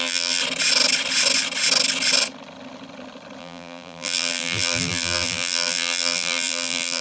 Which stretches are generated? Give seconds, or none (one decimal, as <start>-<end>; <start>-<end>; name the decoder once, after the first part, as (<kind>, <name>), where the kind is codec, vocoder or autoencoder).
0.0-0.4 (vocoder, BigVGAN v2); 3.4-7.0